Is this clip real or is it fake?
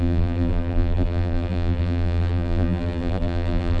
fake